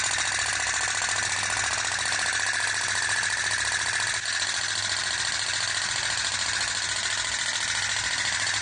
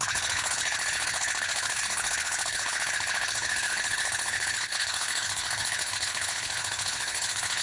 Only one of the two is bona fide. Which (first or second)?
first